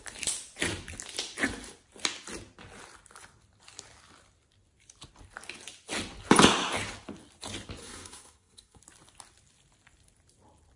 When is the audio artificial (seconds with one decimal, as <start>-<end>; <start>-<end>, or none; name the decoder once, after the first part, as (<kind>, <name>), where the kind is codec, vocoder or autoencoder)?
7.8-8.8 (codec, SNAC)